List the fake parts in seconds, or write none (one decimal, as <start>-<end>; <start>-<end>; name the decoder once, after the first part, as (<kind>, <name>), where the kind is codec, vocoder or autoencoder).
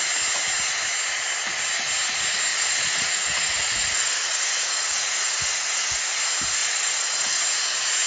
2.5-6.0 (vocoder, Vocos); 6.6-7.4